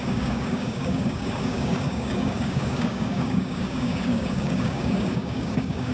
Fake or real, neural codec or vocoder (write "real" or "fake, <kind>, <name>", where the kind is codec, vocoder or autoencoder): fake, codec, DAC